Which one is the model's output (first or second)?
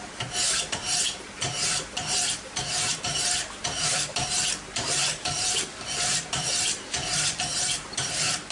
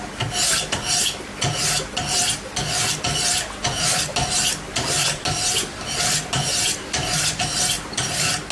first